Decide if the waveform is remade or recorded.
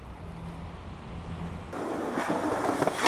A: recorded